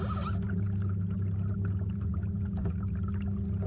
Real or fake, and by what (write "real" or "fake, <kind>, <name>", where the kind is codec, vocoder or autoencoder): real